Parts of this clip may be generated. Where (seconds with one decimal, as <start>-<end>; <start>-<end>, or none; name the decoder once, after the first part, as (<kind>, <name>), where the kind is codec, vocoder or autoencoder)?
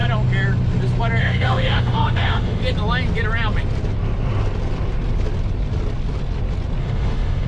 1.2-2.6 (autoencoder, DAC-VAE); 6.8-7.5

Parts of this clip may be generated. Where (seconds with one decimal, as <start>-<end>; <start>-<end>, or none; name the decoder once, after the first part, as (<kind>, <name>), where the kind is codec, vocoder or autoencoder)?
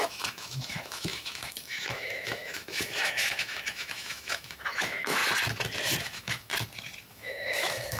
0.0-5.2 (autoencoder, DAC-VAE); 6.0-6.5; 7.1-8.0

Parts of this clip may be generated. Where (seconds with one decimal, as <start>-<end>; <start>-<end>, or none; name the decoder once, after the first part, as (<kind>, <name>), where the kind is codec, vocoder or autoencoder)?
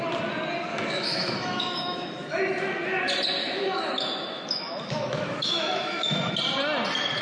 0.7-2.4 (autoencoder, DAC-VAE); 3.4-6.3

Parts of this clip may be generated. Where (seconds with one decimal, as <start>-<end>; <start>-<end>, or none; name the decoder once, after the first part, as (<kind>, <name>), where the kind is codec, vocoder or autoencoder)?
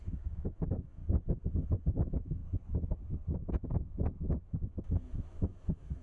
0.0-1.0 (autoencoder, DAC-VAE); 1.9-2.4; 3.5-6.0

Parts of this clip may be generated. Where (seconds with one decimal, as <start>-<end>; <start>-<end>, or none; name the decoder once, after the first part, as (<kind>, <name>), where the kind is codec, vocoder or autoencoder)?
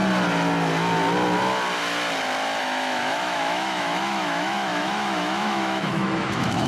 2.6-6.7 (autoencoder, DAC-VAE)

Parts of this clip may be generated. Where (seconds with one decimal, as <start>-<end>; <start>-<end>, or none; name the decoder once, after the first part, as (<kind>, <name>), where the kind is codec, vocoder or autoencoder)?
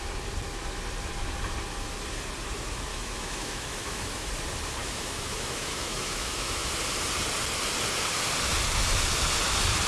2.9-4.3 (autoencoder, DAC-VAE); 4.8-6.6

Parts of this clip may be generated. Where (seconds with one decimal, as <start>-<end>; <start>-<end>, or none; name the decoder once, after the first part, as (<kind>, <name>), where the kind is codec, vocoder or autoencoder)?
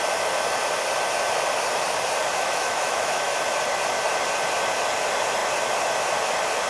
2.3-3.3 (autoencoder, DAC-VAE)